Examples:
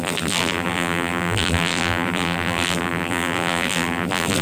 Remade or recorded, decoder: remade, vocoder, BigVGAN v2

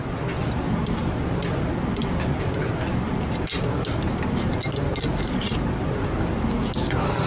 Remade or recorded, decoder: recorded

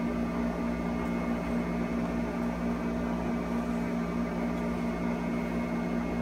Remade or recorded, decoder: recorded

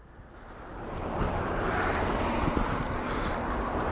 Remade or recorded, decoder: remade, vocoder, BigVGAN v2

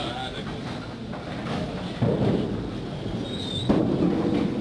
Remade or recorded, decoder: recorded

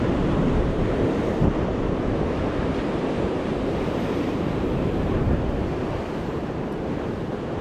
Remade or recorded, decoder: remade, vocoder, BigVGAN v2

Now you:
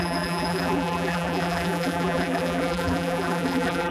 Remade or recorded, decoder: remade, vocoder, BigVGAN v2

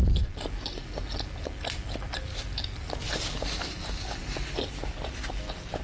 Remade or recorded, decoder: recorded